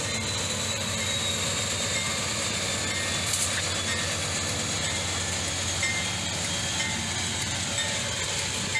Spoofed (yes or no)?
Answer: no